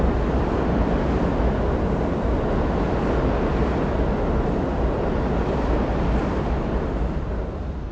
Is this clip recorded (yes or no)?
yes